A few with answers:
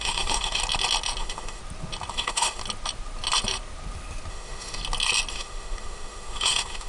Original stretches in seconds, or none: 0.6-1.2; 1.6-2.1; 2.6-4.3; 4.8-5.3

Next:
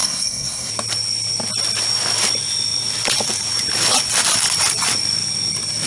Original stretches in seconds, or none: 0.7-5.9

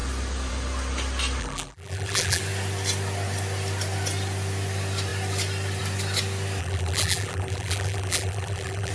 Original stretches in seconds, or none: 0.0-1.4; 2.4-6.6